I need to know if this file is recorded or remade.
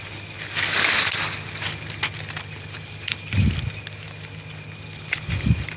recorded